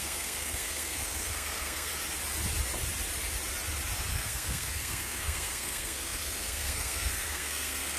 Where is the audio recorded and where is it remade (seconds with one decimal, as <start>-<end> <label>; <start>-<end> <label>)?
0.0-1.9 remade; 1.9-4.1 recorded; 4.1-8.0 remade